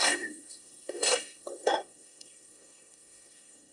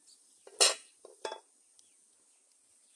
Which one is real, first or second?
second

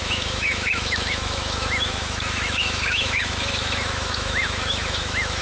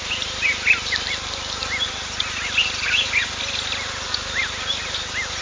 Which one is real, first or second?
second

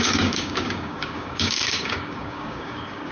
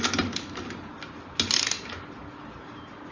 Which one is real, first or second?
second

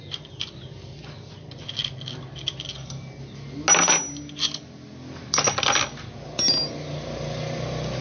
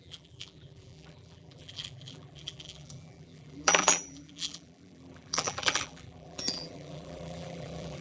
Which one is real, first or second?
first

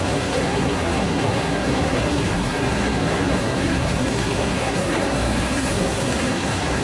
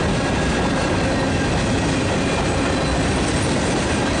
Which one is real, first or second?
second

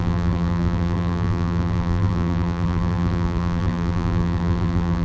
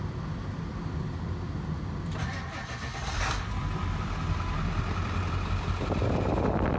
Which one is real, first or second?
second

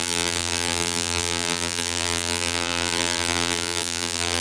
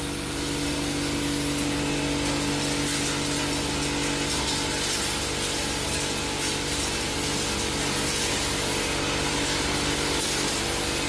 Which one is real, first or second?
second